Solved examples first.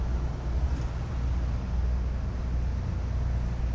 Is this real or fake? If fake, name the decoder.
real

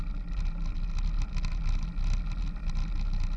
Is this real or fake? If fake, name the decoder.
real